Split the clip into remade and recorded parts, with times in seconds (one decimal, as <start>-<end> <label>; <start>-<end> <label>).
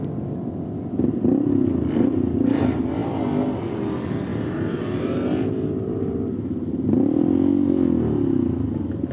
0.0-4.3 recorded; 4.3-5.5 remade; 5.5-9.1 recorded